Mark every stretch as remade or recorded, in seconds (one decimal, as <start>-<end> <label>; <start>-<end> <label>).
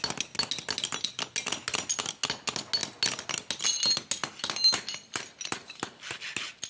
0.0-6.7 recorded